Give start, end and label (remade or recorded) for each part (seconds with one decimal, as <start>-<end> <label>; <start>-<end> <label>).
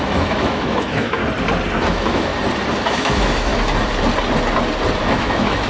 0.0-1.2 remade; 1.2-1.9 recorded; 1.9-2.3 remade; 2.3-2.9 recorded; 2.9-3.5 remade; 3.5-5.0 recorded; 5.0-5.7 remade